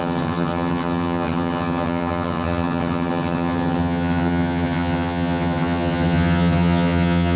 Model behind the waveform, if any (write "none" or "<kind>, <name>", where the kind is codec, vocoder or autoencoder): vocoder, HiFi-GAN